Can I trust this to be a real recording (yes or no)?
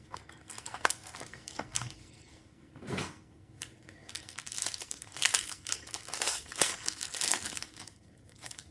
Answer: no